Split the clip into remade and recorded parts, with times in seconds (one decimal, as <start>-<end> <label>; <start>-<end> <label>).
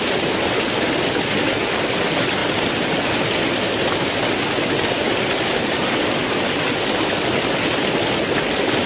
0.0-8.9 recorded